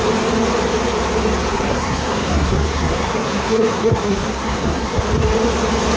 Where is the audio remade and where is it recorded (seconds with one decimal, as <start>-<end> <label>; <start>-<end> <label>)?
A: 0.0-1.5 recorded; 1.5-5.0 remade; 5.0-6.0 recorded